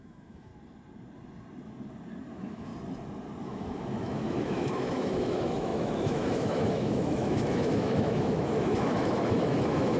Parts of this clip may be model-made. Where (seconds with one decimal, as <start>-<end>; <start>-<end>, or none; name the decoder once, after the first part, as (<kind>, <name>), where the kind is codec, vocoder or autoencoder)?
0.0-0.5 (autoencoder, DAC-VAE); 2.3-2.7; 3.4-10.0